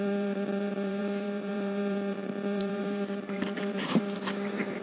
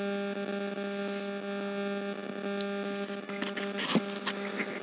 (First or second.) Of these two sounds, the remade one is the first